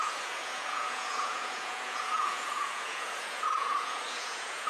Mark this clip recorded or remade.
remade